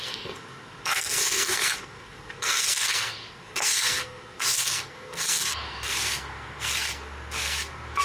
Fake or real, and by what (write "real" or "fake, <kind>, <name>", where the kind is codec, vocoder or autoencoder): fake, codec, SNAC